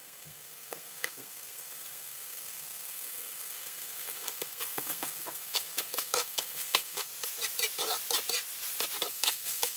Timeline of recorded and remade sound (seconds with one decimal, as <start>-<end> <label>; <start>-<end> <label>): 0.0-7.1 remade; 7.1-9.1 recorded; 9.1-9.8 remade